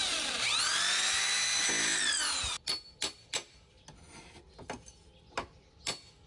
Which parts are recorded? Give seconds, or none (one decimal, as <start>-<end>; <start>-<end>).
0.0-6.3

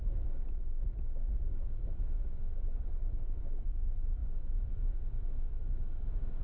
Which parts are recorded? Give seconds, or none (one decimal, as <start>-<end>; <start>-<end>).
0.0-6.4